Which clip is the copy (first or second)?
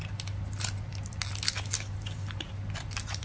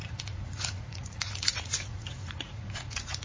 second